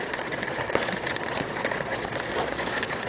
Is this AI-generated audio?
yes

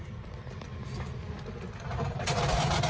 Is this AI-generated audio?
no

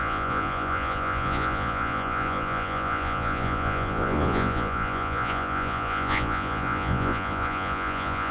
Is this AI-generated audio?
yes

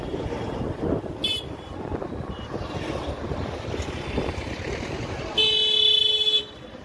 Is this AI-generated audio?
no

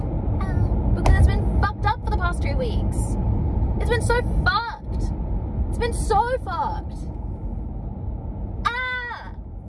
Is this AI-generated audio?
no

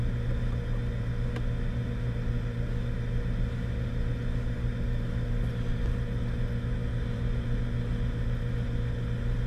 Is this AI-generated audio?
no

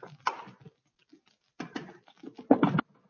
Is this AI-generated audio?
no